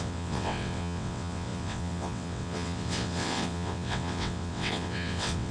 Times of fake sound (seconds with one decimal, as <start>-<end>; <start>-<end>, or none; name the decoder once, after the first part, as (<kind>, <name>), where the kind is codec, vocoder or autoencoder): 0.0-5.5 (vocoder, WaveNeXt)